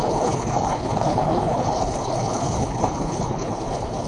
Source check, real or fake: fake